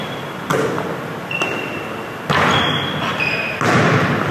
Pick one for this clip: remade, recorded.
recorded